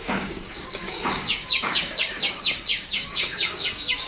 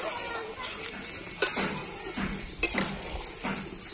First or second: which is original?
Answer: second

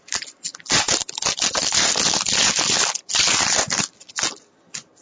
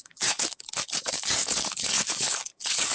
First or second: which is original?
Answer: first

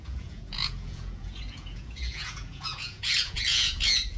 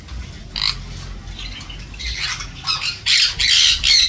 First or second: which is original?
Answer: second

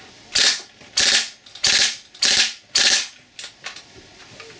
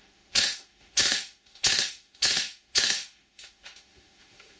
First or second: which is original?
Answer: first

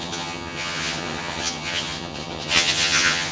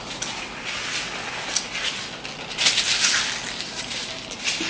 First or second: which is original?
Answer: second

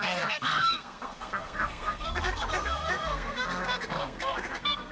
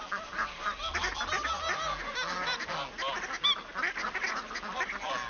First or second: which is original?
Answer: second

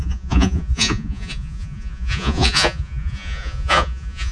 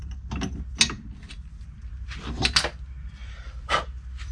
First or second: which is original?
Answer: second